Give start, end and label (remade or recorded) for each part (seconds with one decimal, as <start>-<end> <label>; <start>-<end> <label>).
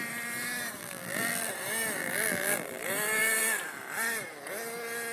0.0-0.8 recorded; 0.8-1.5 remade; 1.5-2.0 recorded; 2.0-2.9 remade; 2.9-5.1 recorded